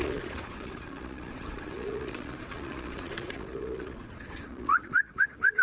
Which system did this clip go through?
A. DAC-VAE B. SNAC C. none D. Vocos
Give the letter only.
D